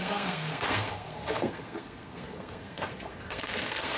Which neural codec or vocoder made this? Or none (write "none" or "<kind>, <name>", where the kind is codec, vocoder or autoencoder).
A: codec, SNAC